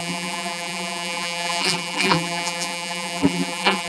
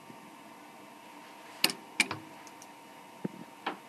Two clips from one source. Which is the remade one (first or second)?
first